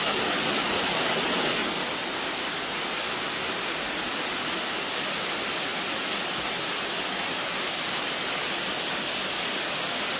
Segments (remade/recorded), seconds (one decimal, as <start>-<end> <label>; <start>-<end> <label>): 0.0-10.2 recorded